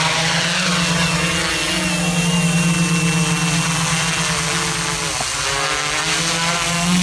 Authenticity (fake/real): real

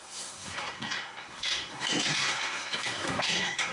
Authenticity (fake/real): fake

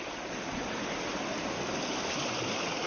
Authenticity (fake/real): real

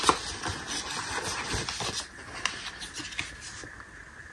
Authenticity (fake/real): real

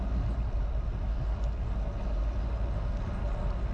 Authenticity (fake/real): real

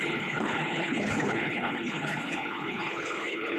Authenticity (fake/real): fake